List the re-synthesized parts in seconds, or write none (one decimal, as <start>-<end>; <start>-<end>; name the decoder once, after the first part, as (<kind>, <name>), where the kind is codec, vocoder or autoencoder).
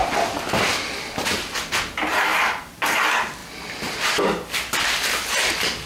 2.3-3.0 (vocoder, BigVGAN v2); 3.4-5.5